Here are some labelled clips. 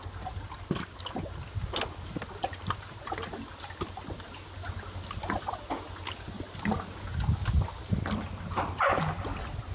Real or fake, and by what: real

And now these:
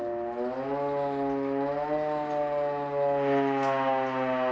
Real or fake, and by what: real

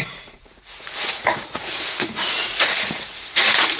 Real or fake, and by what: fake, vocoder, Vocos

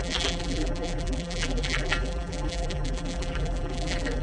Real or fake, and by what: fake, vocoder, BigVGAN v2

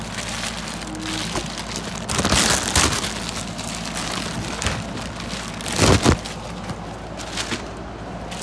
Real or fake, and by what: real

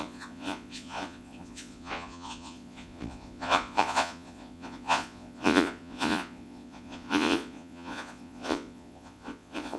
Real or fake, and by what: fake, vocoder, Vocos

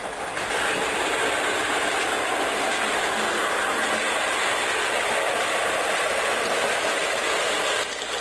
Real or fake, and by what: real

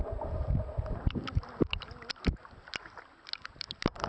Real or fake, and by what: real